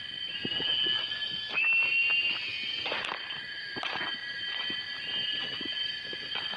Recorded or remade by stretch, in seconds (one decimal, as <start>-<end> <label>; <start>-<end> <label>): 0.0-6.6 recorded